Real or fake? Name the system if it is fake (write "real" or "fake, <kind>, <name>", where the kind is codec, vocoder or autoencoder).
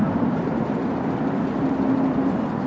real